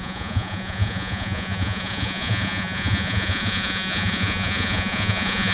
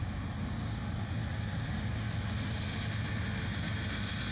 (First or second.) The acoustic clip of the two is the second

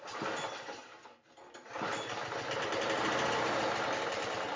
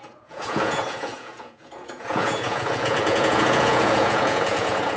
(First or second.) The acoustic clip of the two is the first